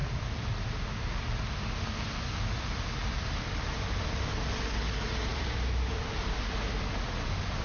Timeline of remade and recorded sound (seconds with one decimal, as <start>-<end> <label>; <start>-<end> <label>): 0.0-5.3 recorded; 5.3-6.0 remade; 6.0-7.6 recorded